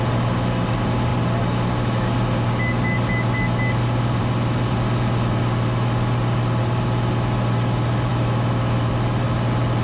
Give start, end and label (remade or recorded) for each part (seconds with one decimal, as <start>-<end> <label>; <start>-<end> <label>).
0.0-8.1 recorded; 8.1-8.9 remade; 8.9-9.8 recorded

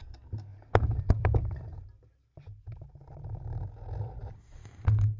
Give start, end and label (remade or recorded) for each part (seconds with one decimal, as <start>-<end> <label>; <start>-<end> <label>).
0.0-0.5 recorded; 0.5-3.6 remade; 3.6-5.2 recorded

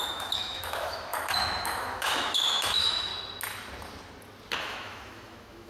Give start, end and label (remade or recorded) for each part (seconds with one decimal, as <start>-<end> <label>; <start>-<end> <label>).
0.0-3.1 remade; 3.1-4.6 recorded; 4.6-5.7 remade